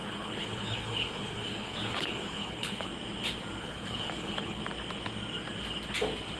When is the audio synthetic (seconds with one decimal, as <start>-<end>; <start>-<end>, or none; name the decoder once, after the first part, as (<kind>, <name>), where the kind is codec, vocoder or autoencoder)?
0.0-2.9 (codec, HILCodec); 3.6-4.6